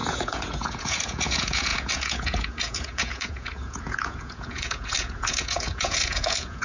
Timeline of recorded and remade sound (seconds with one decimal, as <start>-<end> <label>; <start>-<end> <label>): 0.0-6.6 remade

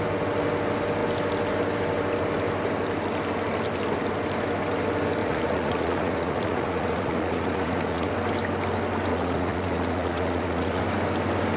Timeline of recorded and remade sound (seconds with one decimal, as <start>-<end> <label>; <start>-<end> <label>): 0.0-5.2 recorded; 5.2-8.1 remade; 8.1-9.1 recorded; 9.1-10.8 remade; 10.8-11.6 recorded

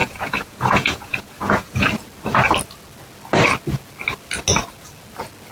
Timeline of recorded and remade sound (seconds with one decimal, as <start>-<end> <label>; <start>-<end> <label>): 0.0-1.9 remade; 1.9-5.5 recorded

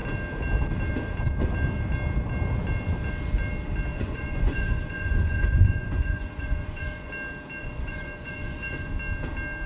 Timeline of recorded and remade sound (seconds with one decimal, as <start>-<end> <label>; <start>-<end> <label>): 0.0-3.9 recorded; 3.9-7.1 remade; 7.1-7.6 recorded; 7.6-8.9 remade; 8.9-9.7 recorded